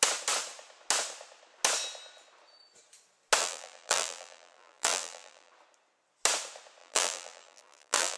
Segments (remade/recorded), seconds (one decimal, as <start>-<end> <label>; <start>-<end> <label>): 0.0-3.4 recorded; 3.4-5.5 remade; 5.5-6.8 recorded; 6.8-8.2 remade